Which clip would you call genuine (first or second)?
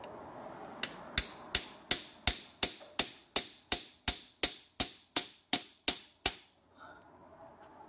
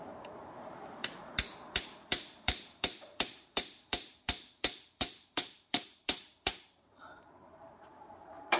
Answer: first